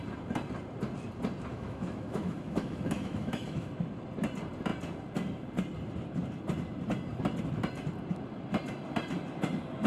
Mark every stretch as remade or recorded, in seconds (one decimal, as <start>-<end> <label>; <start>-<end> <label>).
0.0-1.5 recorded; 1.5-3.7 remade; 3.7-9.9 recorded